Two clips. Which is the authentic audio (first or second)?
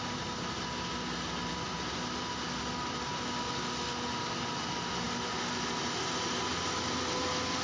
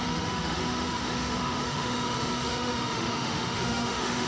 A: first